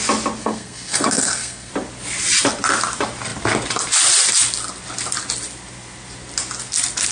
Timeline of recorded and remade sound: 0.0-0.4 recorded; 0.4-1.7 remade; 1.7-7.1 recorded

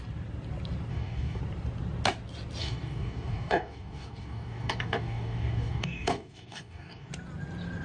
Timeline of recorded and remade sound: 0.0-0.9 recorded; 0.9-1.4 remade; 1.4-2.6 recorded; 2.6-7.1 remade; 7.1-7.8 recorded

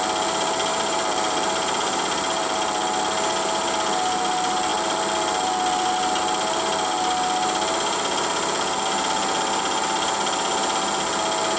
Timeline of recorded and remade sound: 0.0-0.7 recorded; 0.7-3.0 remade; 3.0-4.7 recorded; 4.7-5.9 remade; 5.9-11.6 recorded

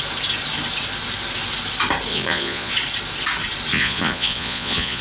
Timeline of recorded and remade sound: 0.0-2.1 recorded; 2.1-2.7 remade; 2.7-3.7 recorded; 3.7-5.0 remade